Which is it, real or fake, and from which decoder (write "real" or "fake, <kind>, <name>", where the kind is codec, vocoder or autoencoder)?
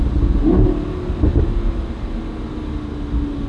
real